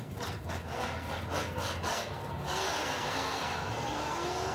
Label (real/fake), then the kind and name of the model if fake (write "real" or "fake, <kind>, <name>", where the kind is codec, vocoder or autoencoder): fake, codec, SNAC